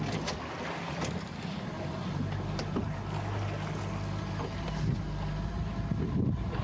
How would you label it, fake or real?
real